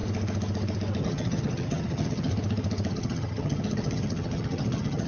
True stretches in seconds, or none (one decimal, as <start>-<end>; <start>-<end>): 0.0-1.0; 2.3-2.9